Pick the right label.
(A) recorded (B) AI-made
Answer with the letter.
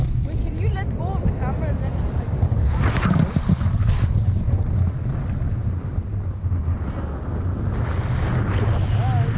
A